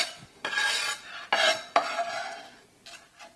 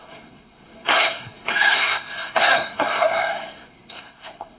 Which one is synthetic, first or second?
second